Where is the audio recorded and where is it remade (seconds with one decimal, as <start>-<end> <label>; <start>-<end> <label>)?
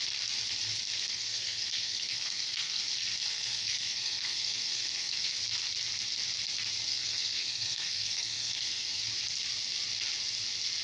0.0-1.1 recorded; 1.1-2.8 remade; 2.8-3.3 recorded; 3.3-5.3 remade; 5.3-6.9 recorded; 6.9-9.0 remade; 9.0-10.8 recorded